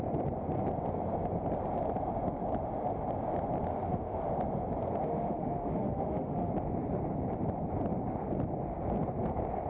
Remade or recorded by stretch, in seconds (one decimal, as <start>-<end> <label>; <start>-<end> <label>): 0.0-3.7 recorded; 3.7-4.3 remade; 4.3-5.0 recorded; 5.0-6.5 remade; 6.5-9.7 recorded